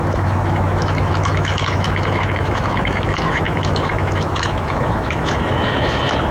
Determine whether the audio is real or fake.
fake